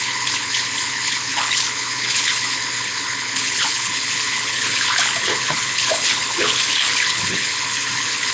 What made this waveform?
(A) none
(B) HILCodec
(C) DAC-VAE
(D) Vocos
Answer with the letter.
B